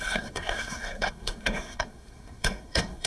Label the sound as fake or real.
fake